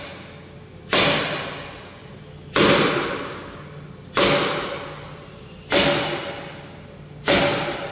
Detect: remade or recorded recorded